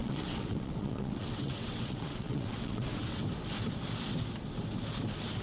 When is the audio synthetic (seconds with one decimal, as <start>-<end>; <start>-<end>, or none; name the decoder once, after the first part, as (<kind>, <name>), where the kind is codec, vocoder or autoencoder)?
0.0-3.2 (vocoder, WaveNeXt)

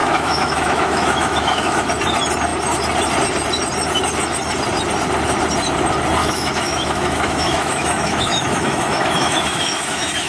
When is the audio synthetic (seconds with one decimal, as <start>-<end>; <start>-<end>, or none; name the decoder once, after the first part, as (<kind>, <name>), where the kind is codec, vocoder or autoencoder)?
0.0-1.9 (autoencoder, DAC-VAE); 6.2-10.3

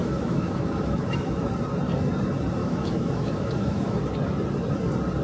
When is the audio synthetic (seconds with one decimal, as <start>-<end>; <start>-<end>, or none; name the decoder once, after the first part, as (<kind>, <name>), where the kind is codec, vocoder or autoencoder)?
0.0-1.5 (autoencoder, DAC-VAE); 2.6-4.0

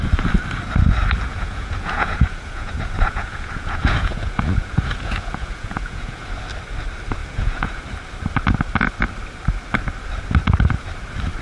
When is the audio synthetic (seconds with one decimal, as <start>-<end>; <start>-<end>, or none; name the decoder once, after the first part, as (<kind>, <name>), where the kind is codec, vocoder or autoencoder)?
1.3-6.3 (vocoder, Vocos); 7.2-7.8

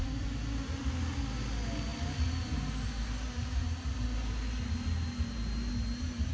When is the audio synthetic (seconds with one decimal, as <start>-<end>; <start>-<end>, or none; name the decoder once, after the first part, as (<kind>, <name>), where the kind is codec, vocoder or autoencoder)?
none

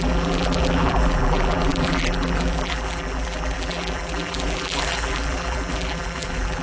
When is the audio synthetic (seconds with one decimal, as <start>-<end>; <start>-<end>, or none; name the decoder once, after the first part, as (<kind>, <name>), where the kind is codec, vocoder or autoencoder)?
0.0-6.6 (vocoder, BigVGAN v2)